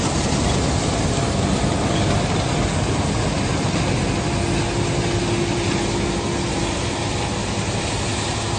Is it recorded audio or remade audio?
recorded